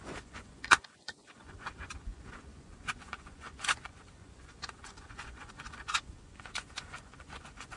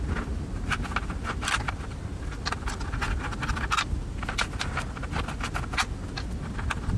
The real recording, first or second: second